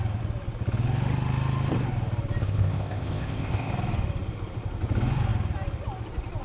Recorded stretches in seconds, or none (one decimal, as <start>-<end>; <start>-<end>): 0.0-2.4; 3.7-6.4